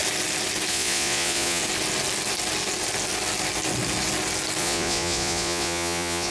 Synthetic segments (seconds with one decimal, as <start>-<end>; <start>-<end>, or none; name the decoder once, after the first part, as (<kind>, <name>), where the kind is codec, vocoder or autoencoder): 0.7-1.6 (vocoder, Vocos); 4.6-6.3